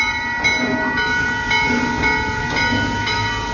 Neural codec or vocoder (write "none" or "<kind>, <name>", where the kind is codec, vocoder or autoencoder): none